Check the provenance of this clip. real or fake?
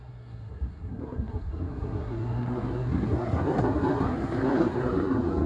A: fake